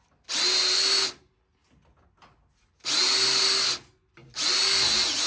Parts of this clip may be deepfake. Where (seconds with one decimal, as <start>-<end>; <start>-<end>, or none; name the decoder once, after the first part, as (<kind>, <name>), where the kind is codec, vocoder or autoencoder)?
none